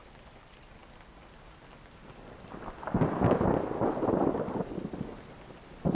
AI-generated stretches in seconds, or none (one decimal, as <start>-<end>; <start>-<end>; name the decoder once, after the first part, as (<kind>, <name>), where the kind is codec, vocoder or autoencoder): none